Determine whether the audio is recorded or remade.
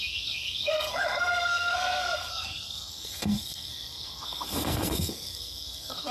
remade